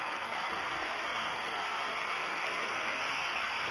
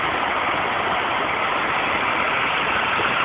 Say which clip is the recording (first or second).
second